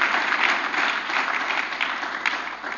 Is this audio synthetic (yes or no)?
no